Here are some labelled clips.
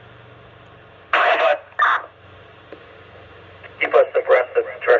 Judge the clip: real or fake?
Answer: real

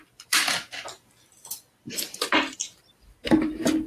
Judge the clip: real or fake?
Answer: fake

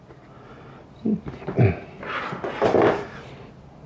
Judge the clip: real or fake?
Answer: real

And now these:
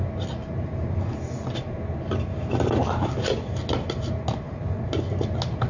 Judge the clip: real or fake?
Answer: real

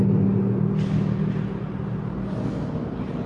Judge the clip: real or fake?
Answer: real